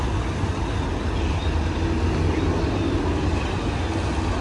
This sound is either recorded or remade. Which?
recorded